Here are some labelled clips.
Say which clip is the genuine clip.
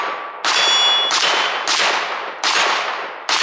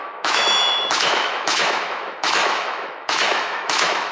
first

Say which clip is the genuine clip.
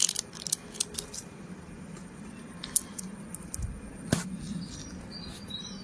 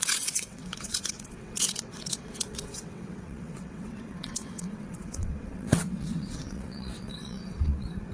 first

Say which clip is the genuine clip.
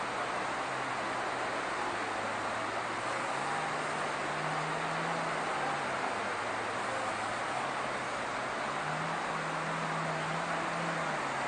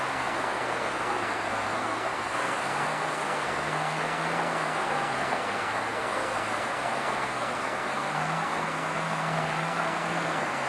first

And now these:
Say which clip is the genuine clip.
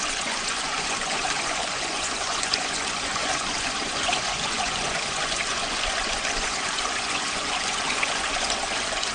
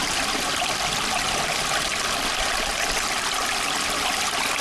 second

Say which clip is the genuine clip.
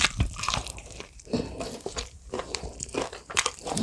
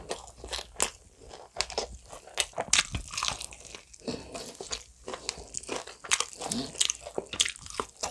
second